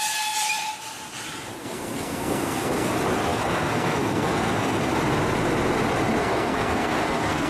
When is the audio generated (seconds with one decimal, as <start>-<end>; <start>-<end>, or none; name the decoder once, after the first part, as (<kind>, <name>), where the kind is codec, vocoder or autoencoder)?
1.6-2.9 (codec, SNAC); 3.3-4.9; 6.2-7.5

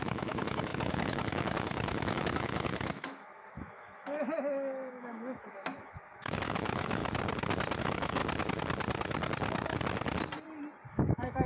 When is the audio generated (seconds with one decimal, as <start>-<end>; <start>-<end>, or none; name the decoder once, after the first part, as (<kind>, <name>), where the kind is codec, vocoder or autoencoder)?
0.0-7.0 (autoencoder, DAC-VAE); 7.8-8.2; 10.9-11.5

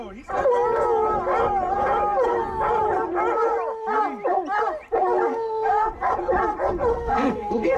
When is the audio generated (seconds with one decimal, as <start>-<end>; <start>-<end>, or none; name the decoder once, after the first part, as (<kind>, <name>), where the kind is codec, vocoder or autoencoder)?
5.3-5.9 (codec, SNAC); 6.9-7.8